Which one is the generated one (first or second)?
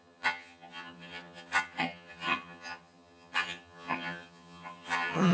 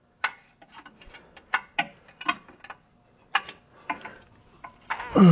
first